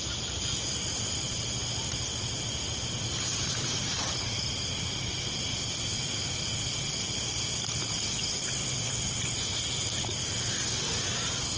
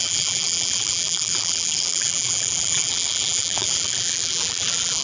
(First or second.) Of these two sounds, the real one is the first